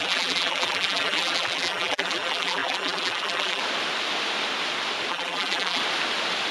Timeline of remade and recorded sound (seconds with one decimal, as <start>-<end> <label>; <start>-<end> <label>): 0.0-3.6 remade; 3.6-5.1 recorded; 5.1-5.8 remade; 5.8-6.5 recorded